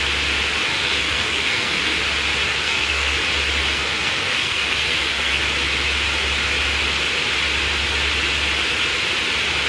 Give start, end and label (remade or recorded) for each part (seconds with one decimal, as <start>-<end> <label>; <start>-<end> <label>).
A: 0.0-0.7 recorded; 0.7-2.0 remade; 2.0-2.5 recorded; 2.5-3.2 remade; 3.2-3.7 recorded; 3.7-5.4 remade; 5.4-9.7 recorded